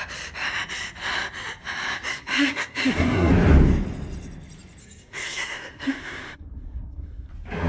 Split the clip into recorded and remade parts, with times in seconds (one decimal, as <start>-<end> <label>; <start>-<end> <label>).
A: 0.0-2.1 recorded; 2.1-3.3 remade; 3.3-4.8 recorded; 4.8-7.3 remade; 7.3-7.7 recorded